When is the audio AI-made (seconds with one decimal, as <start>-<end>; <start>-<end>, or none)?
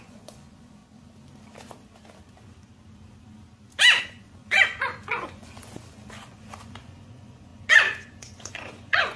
0.0-0.8; 4.0-9.2